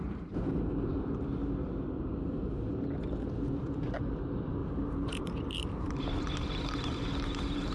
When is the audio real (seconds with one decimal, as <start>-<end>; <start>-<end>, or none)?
1.0-4.6; 6.0-7.7